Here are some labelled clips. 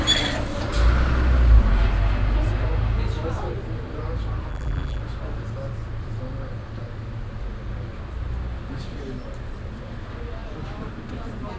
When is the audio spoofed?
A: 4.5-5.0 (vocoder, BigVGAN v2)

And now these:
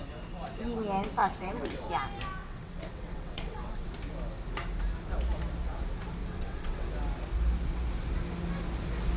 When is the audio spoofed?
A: 1.2-1.9 (vocoder, WaveNeXt); 2.4-3.9; 6.2-6.9

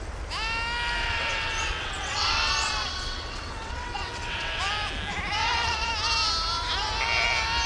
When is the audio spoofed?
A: 1.0-4.6 (vocoder, WaveNeXt); 5.4-5.9